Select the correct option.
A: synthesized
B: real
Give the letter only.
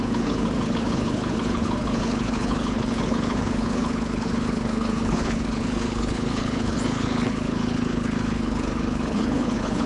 A